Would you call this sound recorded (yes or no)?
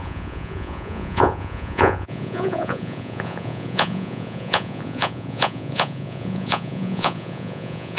no